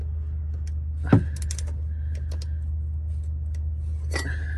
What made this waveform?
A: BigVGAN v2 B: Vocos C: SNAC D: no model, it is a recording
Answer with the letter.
D